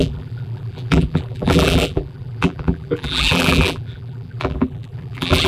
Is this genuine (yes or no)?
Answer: no